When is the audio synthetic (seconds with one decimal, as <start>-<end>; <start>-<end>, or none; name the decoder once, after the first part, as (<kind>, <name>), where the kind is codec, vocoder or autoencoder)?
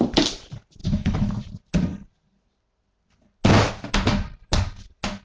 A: 0.8-1.4 (autoencoder, DAC-VAE)